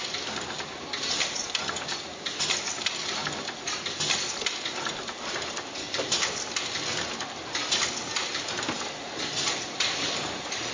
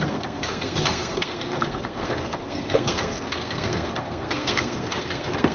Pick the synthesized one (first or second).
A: second